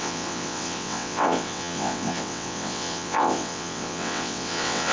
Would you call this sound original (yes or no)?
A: no